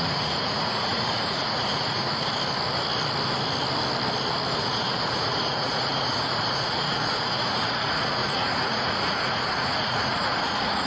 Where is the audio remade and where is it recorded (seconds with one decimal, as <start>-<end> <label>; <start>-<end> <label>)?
0.0-2.3 remade; 2.3-4.5 recorded; 4.5-10.9 remade